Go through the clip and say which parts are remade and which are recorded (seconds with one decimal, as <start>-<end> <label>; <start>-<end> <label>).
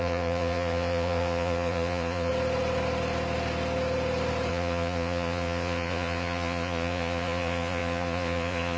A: 0.0-2.3 remade; 2.3-4.5 recorded; 4.5-8.8 remade